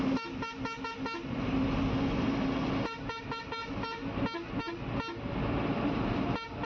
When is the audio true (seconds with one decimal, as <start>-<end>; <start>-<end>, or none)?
0.0-6.6